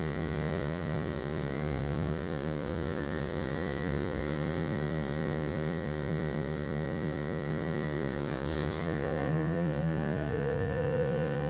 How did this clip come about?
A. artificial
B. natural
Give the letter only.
A